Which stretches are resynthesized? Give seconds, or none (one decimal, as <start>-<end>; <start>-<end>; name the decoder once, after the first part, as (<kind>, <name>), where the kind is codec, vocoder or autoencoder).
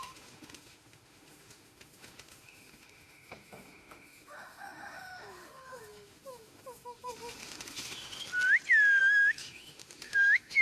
0.0-8.3 (autoencoder, DAC-VAE); 9.0-10.6